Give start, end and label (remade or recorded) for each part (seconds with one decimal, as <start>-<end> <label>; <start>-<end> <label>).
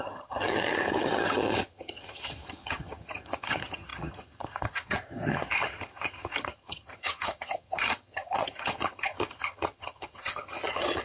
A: 0.0-11.0 remade